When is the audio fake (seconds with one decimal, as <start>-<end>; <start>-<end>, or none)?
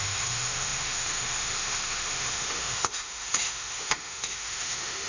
0.0-5.1